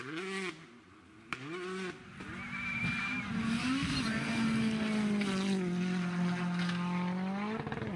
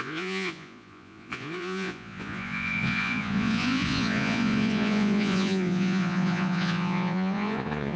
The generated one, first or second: second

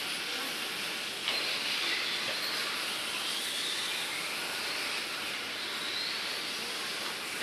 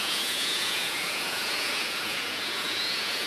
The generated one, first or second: second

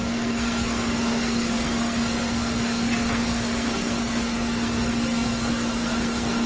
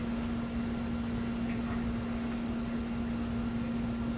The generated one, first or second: first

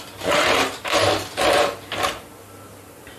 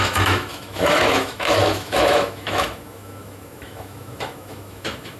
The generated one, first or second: second